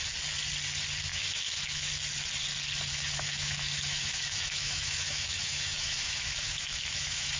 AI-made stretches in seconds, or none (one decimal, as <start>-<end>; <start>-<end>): 1.1-1.9; 2.9-7.4